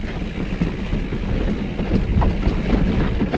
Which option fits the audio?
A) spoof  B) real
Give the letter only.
B